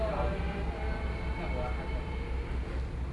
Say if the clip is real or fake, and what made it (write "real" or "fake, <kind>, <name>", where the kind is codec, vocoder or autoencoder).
real